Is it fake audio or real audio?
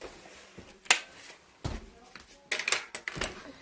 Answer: real